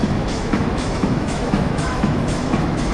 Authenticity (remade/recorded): remade